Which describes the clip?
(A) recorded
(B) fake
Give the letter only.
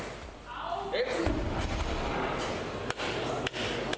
A